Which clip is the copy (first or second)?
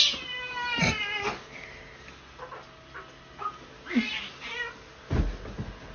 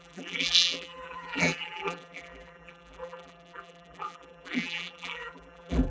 second